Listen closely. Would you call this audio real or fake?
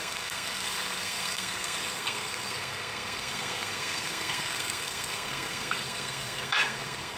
fake